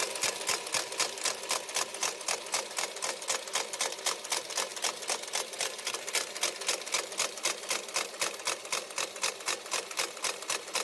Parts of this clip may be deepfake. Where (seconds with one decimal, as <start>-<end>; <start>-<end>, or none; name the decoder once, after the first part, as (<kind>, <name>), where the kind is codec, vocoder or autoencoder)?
none

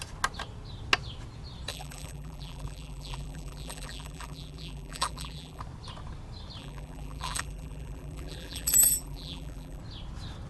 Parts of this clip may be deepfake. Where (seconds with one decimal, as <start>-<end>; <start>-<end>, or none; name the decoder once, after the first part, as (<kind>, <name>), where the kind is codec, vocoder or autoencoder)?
1.7-5.6 (vocoder, BigVGAN v2); 6.6-9.8

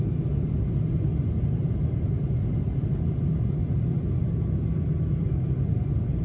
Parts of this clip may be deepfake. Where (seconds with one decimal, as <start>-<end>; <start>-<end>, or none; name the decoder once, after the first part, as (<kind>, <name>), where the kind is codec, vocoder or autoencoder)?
0.0-1.1 (vocoder, BigVGAN v2); 4.8-6.2

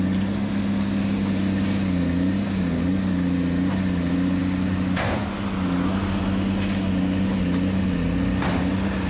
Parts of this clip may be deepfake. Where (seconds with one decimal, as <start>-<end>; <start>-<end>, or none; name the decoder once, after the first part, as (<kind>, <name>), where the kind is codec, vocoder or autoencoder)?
none

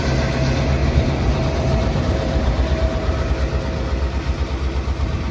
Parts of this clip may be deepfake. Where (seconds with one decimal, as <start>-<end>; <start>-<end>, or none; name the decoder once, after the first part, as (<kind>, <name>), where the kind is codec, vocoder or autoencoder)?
0.8-3.3 (vocoder, BigVGAN v2)

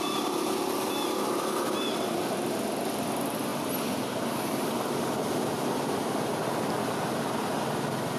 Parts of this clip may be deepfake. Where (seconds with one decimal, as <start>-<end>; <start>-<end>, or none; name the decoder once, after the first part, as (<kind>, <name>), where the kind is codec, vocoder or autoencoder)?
none